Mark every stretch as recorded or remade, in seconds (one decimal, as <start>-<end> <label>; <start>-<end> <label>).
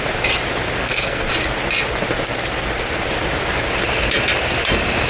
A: 0.0-0.8 recorded; 0.8-1.3 remade; 1.3-5.1 recorded